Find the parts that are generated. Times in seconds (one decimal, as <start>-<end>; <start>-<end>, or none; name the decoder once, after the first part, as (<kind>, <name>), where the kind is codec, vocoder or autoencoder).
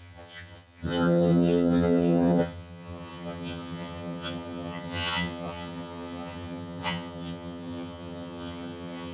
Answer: 0.0-9.1 (vocoder, HiFi-GAN)